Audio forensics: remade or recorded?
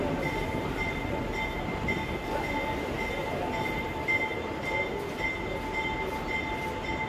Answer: recorded